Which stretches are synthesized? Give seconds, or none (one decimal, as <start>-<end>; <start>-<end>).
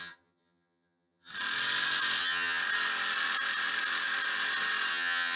0.0-1.3; 2.2-2.6; 4.9-5.4